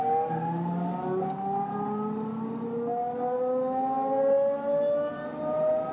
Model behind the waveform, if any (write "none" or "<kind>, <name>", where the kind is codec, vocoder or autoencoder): none